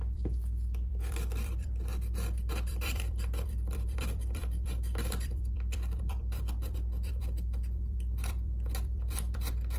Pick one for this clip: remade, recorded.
remade